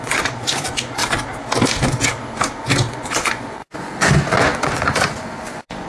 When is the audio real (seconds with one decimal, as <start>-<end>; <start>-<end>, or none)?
1.0-2.9